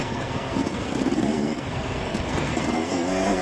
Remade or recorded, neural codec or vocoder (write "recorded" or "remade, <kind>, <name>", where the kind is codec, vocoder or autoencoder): remade, codec, SNAC